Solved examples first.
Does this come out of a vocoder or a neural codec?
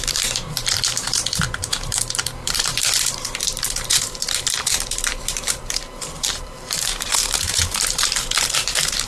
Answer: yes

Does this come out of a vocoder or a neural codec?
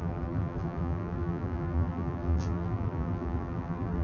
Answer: yes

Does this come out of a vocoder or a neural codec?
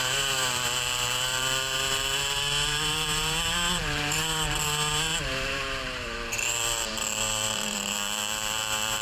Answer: yes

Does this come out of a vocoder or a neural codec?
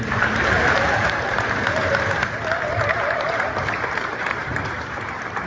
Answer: yes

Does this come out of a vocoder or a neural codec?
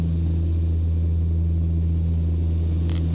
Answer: no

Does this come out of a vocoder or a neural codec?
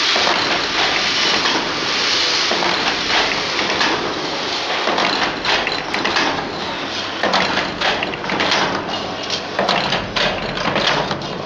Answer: no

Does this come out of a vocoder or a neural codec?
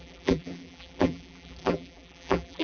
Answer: yes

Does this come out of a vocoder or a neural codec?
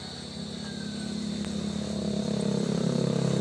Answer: no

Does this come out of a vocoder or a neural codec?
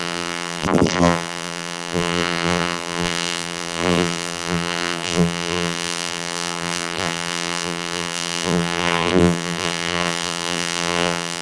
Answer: yes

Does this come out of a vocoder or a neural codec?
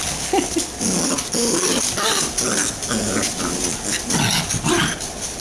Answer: no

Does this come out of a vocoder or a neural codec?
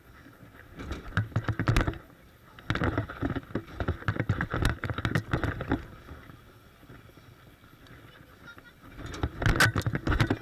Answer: no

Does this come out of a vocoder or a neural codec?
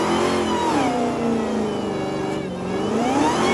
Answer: no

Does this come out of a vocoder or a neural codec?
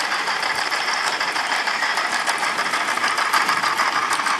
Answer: yes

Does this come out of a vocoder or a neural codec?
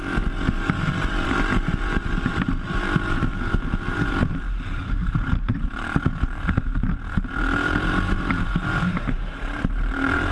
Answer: yes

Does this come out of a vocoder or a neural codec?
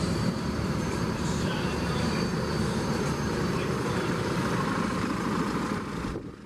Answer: yes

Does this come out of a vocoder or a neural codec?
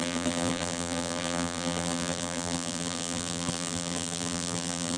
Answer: yes